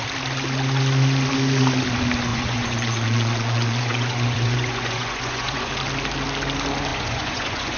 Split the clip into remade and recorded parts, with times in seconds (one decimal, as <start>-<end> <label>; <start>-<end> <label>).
0.0-2.3 recorded; 2.3-5.7 remade; 5.7-6.9 recorded; 6.9-7.8 remade